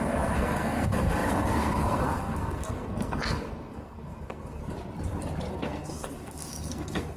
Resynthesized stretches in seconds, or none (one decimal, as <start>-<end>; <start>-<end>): 0.0-4.6; 5.5-7.2